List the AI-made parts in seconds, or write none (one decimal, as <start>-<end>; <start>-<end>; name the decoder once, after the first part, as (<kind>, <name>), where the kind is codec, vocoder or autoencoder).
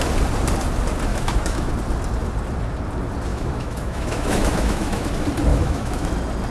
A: 1.1-1.7 (autoencoder, DAC-VAE); 3.3-5.1; 5.5-6.1